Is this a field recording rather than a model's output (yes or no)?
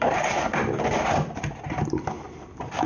yes